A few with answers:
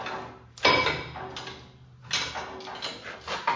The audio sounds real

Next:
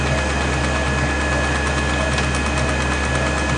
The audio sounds real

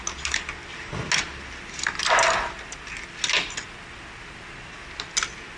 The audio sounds real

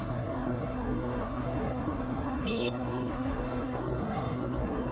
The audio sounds fake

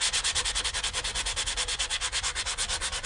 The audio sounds fake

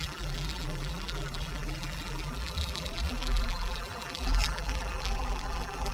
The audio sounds fake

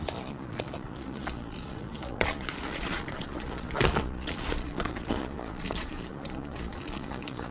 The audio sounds fake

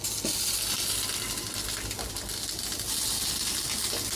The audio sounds real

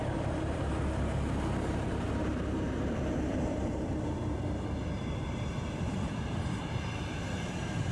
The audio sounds fake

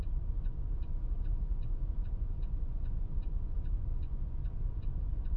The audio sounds fake